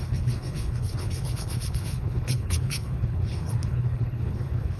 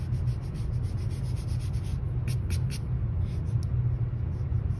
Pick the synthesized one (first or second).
first